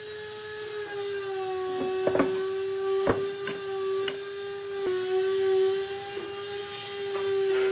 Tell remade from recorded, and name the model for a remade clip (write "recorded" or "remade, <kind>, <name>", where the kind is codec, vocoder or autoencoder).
recorded